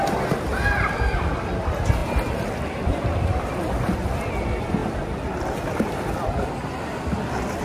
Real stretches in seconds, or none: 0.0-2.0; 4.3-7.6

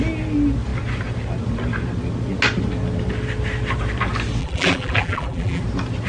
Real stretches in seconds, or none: 0.0-4.4; 5.6-6.1

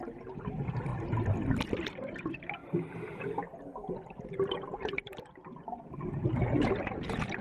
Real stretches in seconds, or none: 0.9-1.9

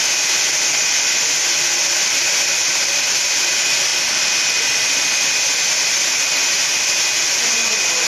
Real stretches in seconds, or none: 0.0-2.6; 3.3-8.1